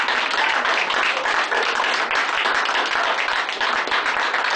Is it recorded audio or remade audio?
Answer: recorded